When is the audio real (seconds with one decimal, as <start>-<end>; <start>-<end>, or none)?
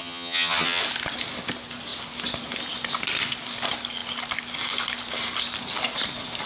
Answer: 0.8-6.5